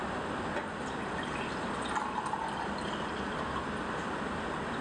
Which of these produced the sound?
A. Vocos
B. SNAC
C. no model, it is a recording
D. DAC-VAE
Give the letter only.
C